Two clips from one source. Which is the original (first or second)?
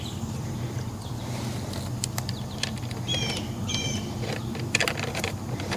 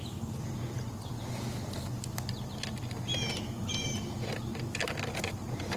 second